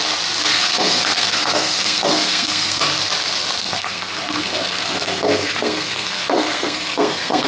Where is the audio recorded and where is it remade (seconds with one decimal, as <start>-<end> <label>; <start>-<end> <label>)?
0.0-0.5 recorded; 0.5-2.8 remade; 2.8-3.6 recorded; 3.6-7.5 remade